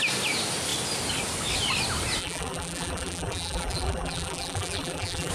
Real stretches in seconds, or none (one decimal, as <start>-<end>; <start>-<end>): 0.0-2.2